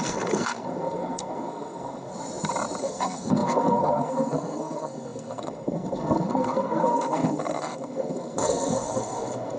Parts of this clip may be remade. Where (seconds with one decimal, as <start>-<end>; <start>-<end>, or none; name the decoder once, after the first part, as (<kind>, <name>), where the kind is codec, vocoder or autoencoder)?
0.0-2.1 (codec, SNAC); 2.8-9.6